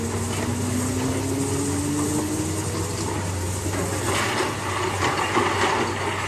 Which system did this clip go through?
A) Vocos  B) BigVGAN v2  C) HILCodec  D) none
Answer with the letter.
D